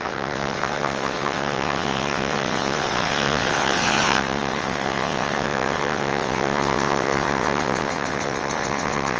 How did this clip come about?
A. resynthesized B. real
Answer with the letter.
A